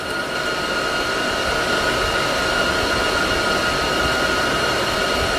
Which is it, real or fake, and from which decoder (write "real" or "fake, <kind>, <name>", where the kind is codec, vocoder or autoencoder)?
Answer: real